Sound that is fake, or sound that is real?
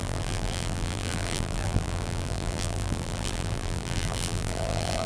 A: fake